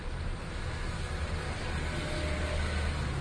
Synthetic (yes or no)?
no